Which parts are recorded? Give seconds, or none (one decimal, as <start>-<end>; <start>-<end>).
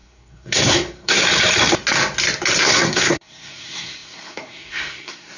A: 1.2-2.6